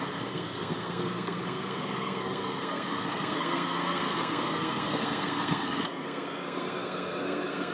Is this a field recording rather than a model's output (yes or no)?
no